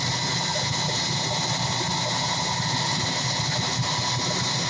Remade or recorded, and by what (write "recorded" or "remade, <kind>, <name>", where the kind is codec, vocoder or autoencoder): recorded